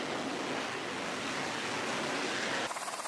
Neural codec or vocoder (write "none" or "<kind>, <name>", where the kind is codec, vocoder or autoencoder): none